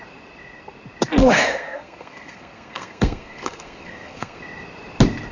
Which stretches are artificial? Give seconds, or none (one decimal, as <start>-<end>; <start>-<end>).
1.2-4.4